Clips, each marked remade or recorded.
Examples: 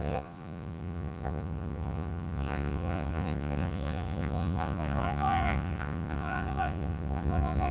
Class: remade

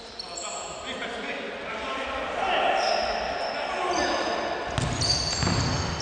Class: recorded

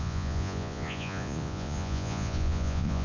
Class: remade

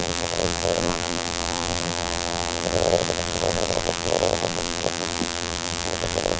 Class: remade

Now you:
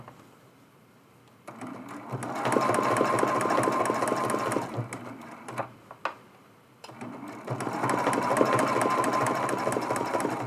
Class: recorded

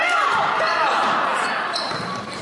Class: remade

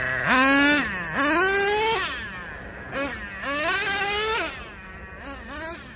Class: recorded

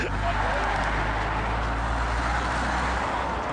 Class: recorded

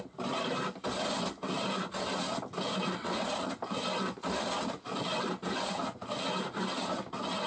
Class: recorded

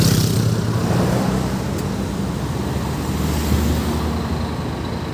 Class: recorded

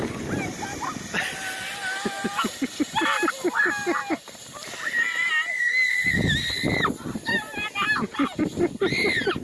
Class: recorded